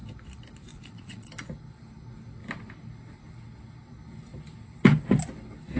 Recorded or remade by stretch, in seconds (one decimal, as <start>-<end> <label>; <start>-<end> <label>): 0.0-0.7 recorded; 0.7-1.3 remade; 1.3-5.8 recorded